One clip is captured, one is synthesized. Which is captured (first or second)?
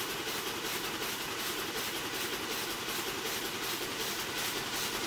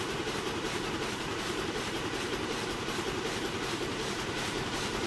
first